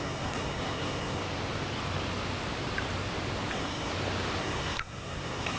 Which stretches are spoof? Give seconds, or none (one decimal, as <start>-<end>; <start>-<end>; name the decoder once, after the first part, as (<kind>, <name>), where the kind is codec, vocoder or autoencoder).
0.0-1.2 (codec, SNAC); 3.5-3.9; 4.4-5.6